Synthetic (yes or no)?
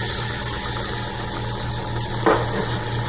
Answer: no